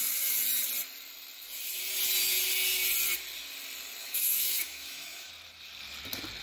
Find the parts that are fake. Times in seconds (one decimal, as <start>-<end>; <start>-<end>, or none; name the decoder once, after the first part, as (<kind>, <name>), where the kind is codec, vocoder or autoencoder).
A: 4.0-5.3 (autoencoder, DAC-VAE)